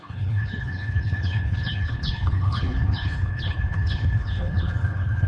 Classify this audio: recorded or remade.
remade